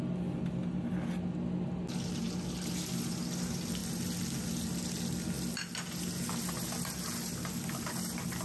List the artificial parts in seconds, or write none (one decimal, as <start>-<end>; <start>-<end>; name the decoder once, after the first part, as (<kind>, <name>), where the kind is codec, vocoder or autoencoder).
none